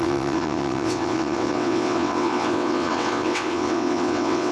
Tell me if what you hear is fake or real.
fake